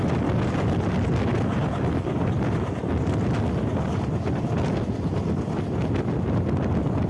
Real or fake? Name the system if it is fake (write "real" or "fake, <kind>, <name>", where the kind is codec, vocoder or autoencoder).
real